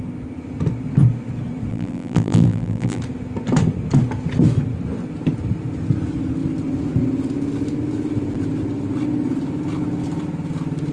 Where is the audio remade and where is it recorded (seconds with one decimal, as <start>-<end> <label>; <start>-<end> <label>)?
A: 0.0-1.7 recorded; 1.7-3.0 remade; 3.0-10.9 recorded